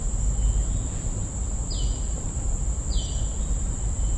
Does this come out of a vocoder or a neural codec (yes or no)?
no